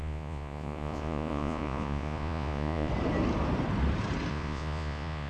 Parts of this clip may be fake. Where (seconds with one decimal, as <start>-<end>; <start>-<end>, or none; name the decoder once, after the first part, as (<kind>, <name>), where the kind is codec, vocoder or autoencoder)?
0.0-2.9 (vocoder, Vocos); 4.3-5.3